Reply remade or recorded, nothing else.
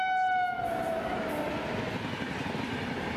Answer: recorded